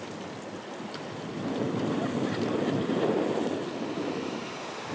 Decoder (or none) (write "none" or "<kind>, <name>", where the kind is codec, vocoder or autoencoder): none